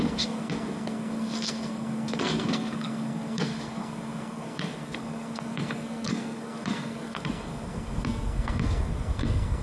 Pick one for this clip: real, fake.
fake